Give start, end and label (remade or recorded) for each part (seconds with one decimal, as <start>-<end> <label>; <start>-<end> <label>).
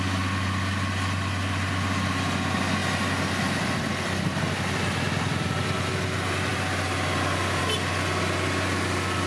0.0-9.3 recorded